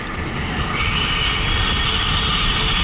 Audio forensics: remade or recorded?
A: recorded